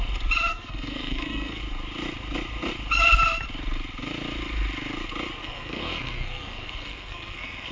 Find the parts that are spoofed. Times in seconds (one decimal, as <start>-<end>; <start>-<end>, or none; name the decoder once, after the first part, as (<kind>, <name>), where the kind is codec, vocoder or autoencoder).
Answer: 0.5-1.6 (codec, SNAC); 5.4-7.7